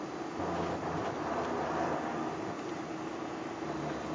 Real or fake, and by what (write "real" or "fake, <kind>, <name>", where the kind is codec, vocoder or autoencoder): real